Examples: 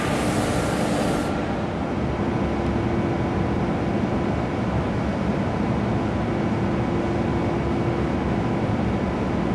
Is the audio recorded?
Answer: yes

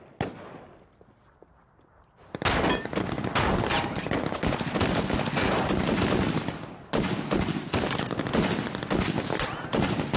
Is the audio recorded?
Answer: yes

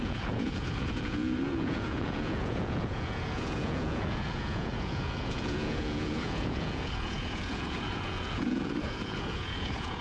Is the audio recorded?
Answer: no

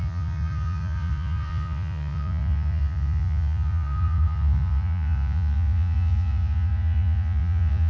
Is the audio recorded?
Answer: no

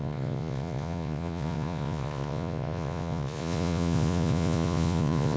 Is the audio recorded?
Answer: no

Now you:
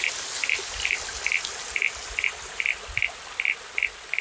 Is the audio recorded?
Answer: yes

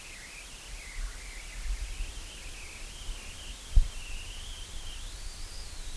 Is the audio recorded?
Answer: yes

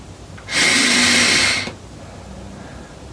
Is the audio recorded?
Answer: yes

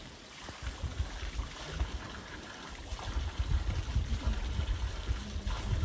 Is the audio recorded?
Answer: yes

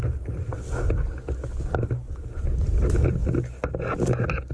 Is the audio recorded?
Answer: yes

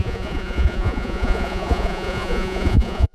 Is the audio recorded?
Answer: no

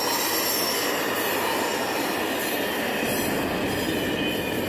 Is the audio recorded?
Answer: yes